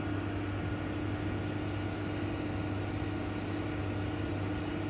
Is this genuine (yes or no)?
yes